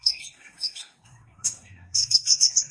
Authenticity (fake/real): fake